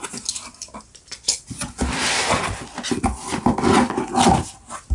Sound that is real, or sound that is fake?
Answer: real